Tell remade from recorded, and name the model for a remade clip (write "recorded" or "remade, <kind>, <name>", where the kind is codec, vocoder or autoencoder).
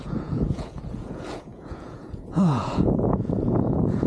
remade, vocoder, Vocos